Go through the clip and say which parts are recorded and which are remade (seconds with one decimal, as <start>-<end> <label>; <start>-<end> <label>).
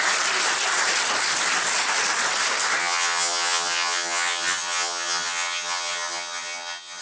0.0-2.8 recorded; 2.8-7.0 remade